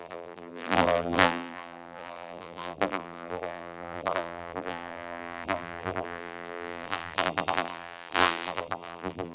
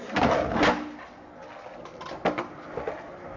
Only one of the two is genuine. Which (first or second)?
second